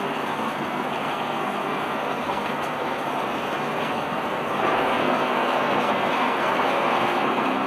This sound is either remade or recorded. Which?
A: remade